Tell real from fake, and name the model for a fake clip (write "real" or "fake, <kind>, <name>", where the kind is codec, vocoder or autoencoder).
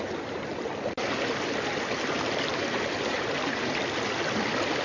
real